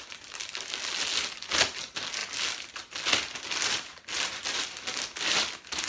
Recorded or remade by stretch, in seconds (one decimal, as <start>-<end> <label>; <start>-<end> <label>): 0.0-5.9 recorded